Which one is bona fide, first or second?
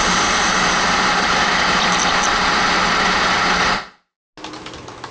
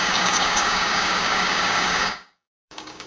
first